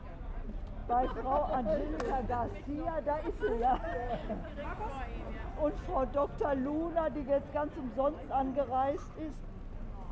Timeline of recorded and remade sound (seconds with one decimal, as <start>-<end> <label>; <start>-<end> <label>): 0.0-10.1 recorded